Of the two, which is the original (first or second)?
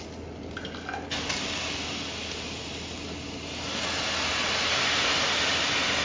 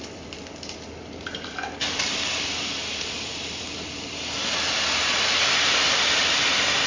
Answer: first